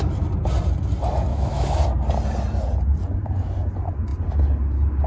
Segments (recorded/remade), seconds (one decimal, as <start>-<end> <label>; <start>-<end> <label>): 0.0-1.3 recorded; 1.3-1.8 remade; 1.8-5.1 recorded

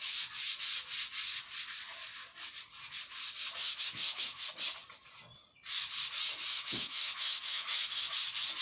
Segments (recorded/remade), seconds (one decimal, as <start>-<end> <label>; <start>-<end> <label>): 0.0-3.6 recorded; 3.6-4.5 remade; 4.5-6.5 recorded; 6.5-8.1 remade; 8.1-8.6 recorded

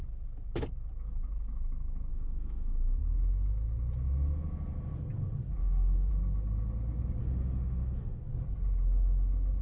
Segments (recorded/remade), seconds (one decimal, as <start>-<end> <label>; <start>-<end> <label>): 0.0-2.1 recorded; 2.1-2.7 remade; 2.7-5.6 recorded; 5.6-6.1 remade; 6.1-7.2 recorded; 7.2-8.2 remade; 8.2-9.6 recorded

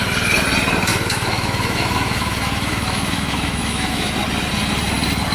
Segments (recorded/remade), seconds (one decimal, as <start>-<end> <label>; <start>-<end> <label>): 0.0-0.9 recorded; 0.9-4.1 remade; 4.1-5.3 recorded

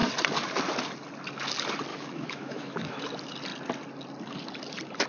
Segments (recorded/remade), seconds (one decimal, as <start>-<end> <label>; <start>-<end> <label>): 0.0-1.9 recorded; 1.9-3.0 remade; 3.0-5.1 recorded

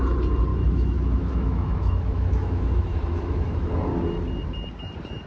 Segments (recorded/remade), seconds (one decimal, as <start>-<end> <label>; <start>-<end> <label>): 0.0-0.5 recorded; 0.5-3.7 remade; 3.7-5.3 recorded